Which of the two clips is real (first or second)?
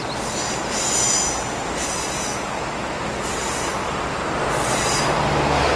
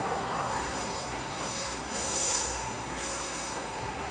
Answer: first